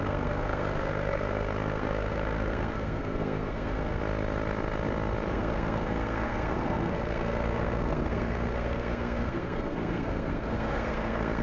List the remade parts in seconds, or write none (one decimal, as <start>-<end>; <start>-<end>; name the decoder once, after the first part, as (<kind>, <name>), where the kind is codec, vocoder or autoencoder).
0.0-4.0 (codec, SNAC); 5.3-11.4

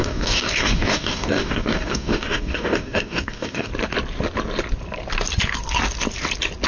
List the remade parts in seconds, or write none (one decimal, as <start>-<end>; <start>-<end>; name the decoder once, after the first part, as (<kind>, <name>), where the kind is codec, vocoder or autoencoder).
0.0-3.7 (codec, DAC)